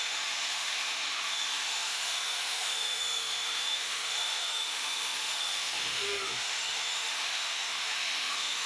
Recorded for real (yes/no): no